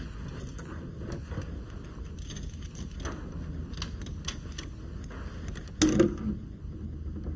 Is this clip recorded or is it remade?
recorded